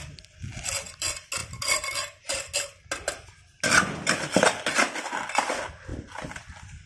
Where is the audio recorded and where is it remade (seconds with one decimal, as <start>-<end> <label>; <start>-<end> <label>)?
0.0-6.9 recorded